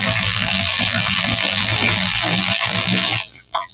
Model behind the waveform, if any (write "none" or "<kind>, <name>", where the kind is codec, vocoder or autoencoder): vocoder, BigVGAN v2